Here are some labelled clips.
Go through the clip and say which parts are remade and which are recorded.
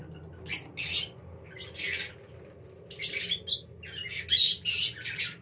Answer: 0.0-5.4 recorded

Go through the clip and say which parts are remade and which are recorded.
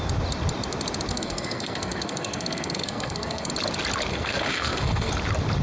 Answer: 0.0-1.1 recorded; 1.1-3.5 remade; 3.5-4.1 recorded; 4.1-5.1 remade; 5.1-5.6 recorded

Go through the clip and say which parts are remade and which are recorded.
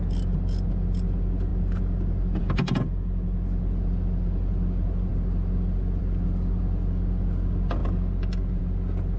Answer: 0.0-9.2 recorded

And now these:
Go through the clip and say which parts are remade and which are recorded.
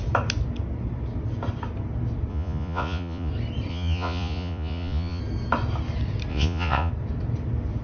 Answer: 0.0-2.3 recorded; 2.3-3.3 remade; 3.3-3.7 recorded; 3.7-5.2 remade; 5.2-6.3 recorded; 6.3-6.9 remade; 6.9-7.8 recorded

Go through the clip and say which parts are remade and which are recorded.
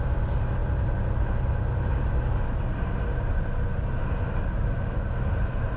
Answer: 0.0-5.8 recorded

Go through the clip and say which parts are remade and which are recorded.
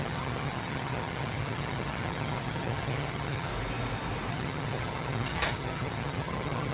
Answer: 0.0-3.5 remade; 3.5-4.3 recorded; 4.3-6.7 remade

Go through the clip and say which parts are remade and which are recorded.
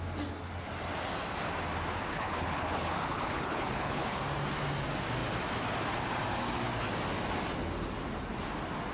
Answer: 0.0-2.1 recorded; 2.1-4.2 remade; 4.2-8.9 recorded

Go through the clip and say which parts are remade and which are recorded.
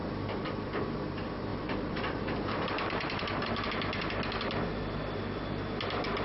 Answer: 0.0-1.5 recorded; 1.5-3.5 remade; 3.5-6.2 recorded